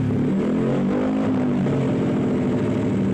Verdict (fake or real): real